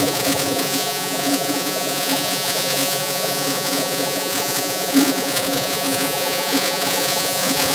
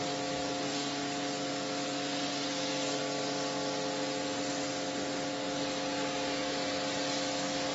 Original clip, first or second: second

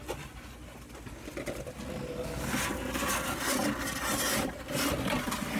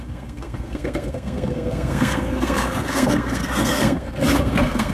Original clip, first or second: first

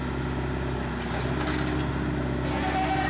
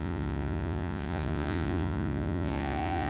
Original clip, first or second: first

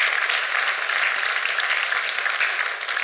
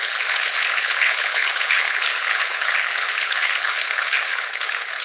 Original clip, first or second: first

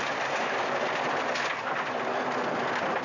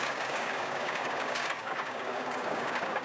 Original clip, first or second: first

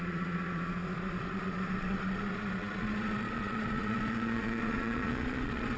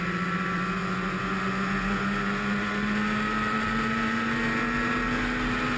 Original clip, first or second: second